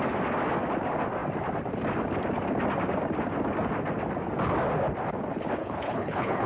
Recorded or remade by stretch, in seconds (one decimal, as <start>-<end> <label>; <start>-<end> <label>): 0.0-5.6 recorded; 5.6-6.5 remade